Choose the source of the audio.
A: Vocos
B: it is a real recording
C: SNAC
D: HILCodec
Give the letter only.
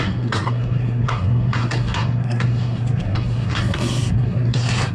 C